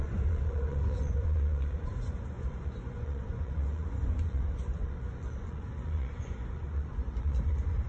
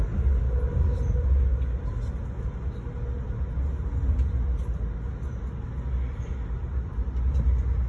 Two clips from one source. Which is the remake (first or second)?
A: first